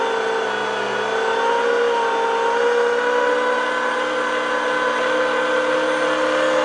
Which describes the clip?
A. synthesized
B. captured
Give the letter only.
B